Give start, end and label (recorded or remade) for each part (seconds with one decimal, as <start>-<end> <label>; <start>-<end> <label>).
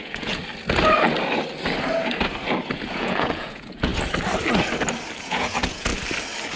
0.0-0.4 remade; 0.4-2.9 recorded; 2.9-3.9 remade; 3.9-5.2 recorded; 5.2-5.9 remade; 5.9-6.6 recorded